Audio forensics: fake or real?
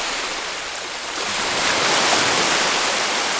real